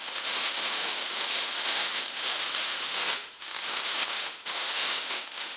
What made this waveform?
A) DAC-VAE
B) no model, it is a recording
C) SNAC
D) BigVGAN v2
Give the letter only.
A